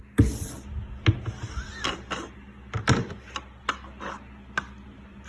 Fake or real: real